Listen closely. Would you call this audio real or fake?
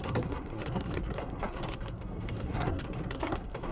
fake